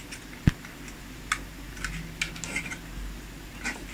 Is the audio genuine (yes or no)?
yes